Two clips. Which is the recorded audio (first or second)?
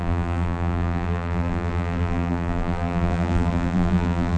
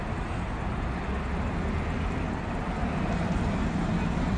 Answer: second